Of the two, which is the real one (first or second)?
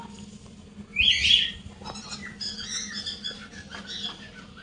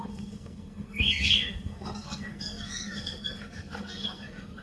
first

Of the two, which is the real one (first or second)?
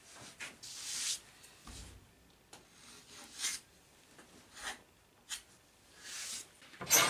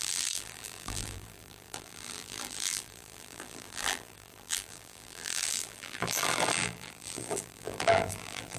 first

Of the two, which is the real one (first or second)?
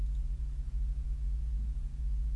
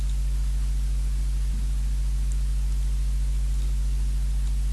second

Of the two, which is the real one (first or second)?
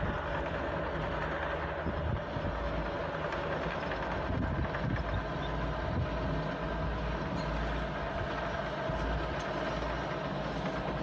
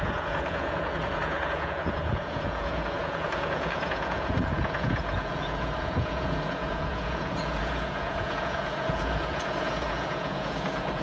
first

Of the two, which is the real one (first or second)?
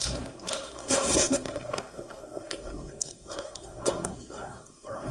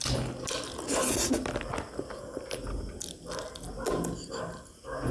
second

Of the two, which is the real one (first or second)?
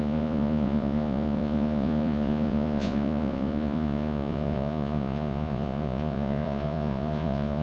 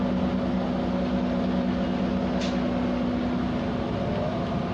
second